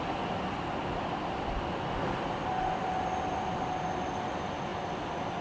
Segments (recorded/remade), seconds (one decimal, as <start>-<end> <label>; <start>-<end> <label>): 0.0-5.4 recorded